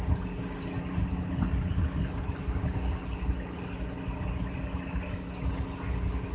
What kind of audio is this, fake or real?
real